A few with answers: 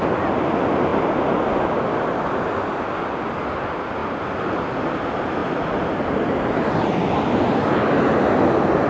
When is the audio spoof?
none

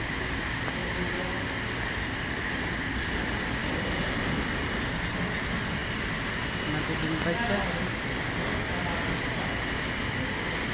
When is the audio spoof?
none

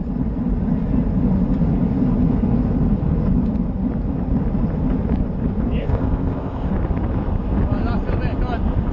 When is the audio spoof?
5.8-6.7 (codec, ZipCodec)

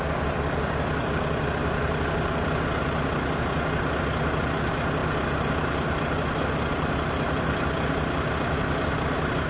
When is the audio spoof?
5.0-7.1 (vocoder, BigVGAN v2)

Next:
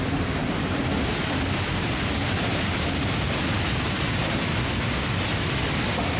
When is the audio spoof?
0.4-4.1 (vocoder, BigVGAN v2)

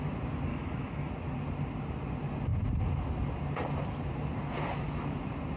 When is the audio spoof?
0.5-1.1 (autoencoder, DAC-VAE)

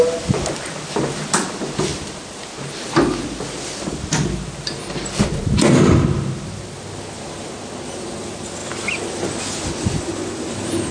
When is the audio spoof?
none